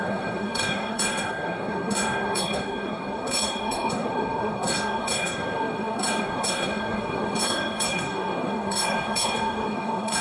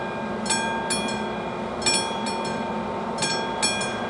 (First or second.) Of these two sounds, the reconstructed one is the first